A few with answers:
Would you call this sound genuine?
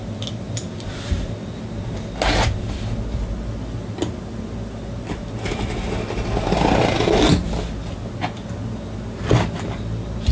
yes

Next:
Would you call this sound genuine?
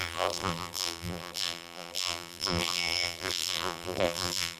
no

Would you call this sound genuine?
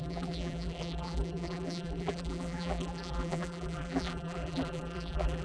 no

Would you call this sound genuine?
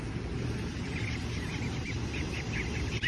yes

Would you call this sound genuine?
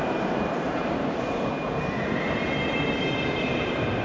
no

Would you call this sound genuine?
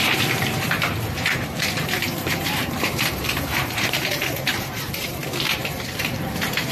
no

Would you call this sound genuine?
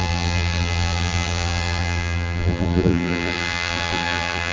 no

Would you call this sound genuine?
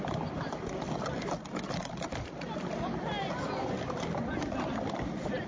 no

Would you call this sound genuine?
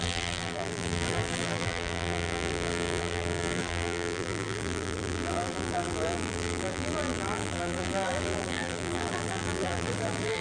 no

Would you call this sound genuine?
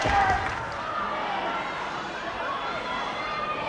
no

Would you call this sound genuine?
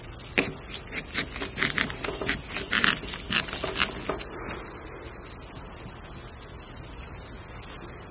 yes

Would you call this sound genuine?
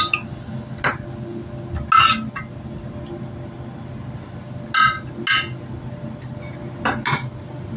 yes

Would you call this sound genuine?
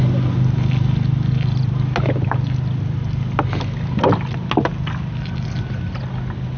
yes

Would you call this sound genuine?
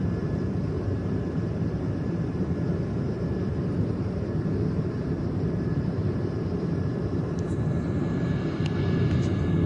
no